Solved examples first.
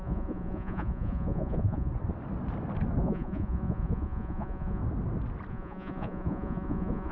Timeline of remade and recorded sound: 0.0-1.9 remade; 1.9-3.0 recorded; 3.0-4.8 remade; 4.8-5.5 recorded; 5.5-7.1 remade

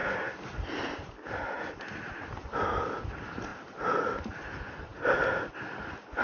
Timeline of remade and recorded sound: 0.0-6.2 recorded

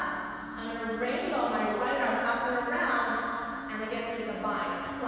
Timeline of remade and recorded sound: 0.0-0.6 remade; 0.6-2.8 recorded; 2.8-5.1 remade

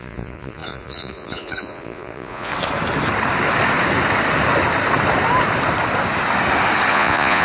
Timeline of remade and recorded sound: 0.0-2.5 remade; 2.5-6.9 recorded; 6.9-7.4 remade